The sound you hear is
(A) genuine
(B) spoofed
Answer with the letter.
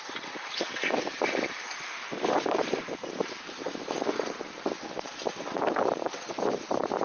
B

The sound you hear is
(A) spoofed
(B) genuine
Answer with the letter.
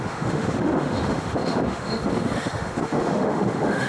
A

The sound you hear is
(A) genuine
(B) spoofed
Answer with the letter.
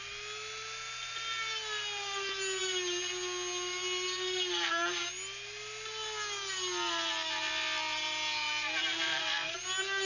A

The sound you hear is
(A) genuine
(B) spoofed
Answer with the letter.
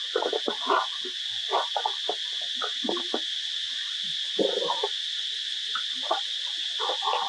A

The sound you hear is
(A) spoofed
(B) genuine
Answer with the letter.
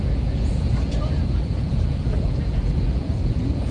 A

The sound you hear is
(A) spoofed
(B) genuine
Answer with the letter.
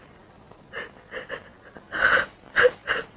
B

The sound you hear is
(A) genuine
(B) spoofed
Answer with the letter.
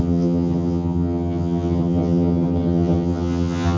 B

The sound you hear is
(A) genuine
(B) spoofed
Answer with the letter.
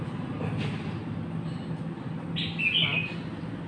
A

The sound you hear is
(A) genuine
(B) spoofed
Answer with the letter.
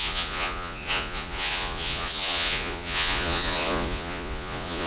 B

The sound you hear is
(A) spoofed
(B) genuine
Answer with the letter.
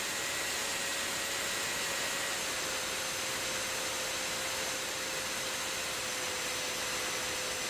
B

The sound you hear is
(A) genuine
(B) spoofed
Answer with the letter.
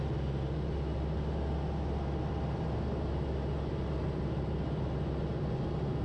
A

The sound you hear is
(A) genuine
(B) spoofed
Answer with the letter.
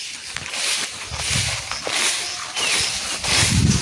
A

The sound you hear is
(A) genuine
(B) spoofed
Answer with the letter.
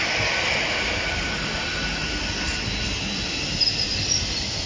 A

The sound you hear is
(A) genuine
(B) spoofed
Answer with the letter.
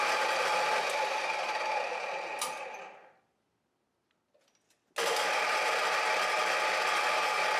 A